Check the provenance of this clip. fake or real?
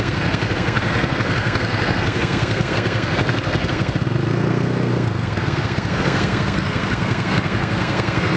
fake